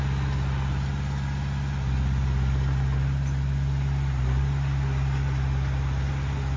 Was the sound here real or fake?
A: real